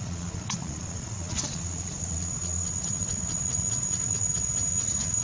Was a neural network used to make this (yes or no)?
yes